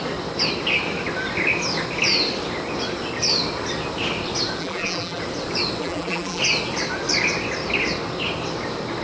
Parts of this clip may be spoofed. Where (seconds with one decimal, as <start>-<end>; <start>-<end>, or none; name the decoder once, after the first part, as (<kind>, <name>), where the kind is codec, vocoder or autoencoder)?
4.6-5.2 (vocoder, BigVGAN v2); 5.8-6.4

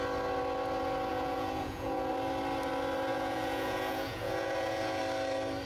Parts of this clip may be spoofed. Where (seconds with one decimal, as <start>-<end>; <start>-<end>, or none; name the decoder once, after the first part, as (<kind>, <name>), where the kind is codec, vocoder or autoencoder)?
1.1-2.1 (vocoder, Vocos); 3.1-5.0